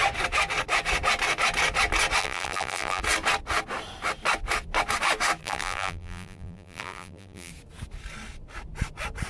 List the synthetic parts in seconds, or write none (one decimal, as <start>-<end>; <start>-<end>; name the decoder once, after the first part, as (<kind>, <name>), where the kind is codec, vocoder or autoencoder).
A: 2.2-3.0 (vocoder, BigVGAN v2); 5.4-7.5